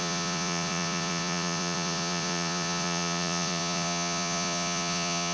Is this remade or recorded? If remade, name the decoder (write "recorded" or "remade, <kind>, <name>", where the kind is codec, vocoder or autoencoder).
remade, vocoder, Vocos